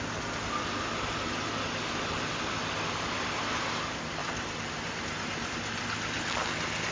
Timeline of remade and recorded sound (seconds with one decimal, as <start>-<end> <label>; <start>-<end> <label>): 0.0-4.2 recorded; 4.2-5.3 remade; 5.3-6.9 recorded